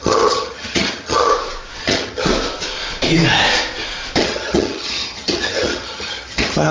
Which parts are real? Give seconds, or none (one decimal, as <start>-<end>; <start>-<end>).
1.3-1.8; 2.3-4.2